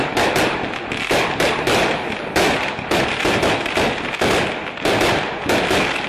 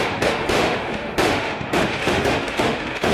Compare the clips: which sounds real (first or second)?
first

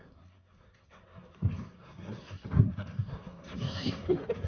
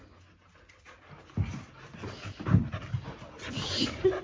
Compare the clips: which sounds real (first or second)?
second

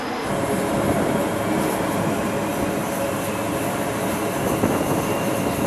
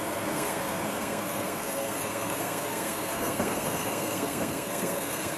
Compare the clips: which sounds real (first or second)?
first